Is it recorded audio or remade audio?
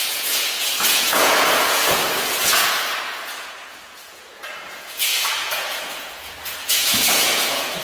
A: remade